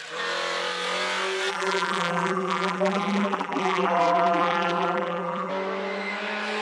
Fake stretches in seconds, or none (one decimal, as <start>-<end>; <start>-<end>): 1.5-5.5